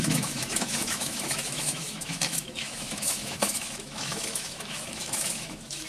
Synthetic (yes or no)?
yes